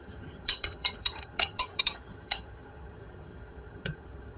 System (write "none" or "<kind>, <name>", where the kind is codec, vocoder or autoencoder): vocoder, HiFi-GAN